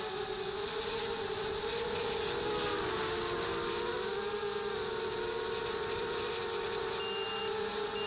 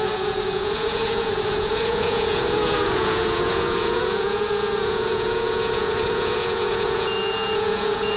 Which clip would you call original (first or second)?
first